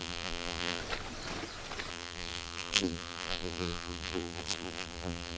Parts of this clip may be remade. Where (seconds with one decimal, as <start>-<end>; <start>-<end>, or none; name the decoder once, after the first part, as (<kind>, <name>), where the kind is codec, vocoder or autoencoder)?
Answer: 0.0-0.8 (vocoder, BigVGAN v2); 1.9-5.4